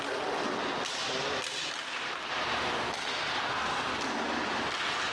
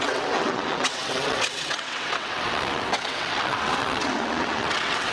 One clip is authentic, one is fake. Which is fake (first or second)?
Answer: second